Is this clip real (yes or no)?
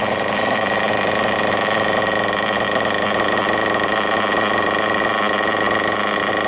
yes